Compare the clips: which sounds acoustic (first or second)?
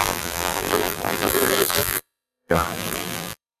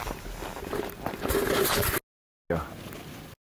second